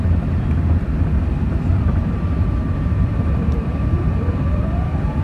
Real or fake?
fake